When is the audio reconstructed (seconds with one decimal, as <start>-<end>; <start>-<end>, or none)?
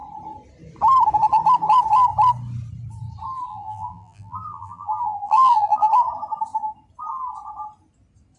3.5-5.9